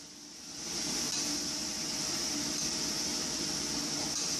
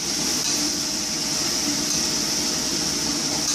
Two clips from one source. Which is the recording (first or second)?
first